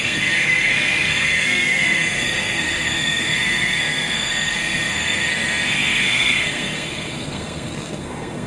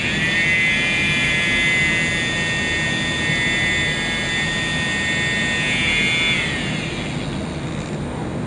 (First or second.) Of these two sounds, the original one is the second